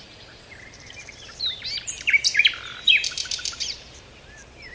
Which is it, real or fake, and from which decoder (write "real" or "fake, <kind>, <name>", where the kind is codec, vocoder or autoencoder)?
fake, vocoder, BigVGAN v2